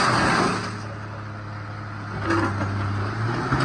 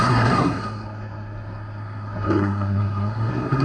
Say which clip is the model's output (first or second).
second